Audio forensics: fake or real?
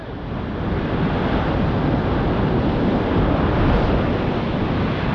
real